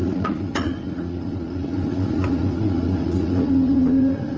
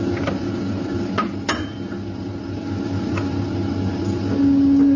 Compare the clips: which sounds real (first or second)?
second